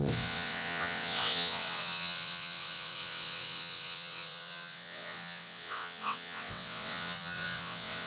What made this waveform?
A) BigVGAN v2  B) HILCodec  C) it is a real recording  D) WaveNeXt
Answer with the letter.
D